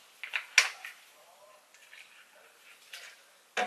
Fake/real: real